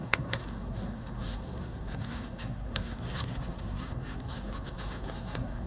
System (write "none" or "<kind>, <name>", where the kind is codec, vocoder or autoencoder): codec, SNAC